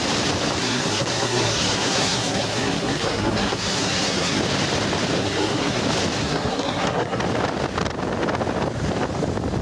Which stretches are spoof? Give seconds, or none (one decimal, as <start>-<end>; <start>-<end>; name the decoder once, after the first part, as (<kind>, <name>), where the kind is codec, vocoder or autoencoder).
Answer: 0.6-4.4 (codec, SNAC); 5.2-5.8; 6.2-7.2